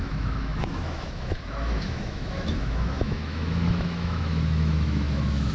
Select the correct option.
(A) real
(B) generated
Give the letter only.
B